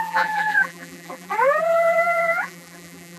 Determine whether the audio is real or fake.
fake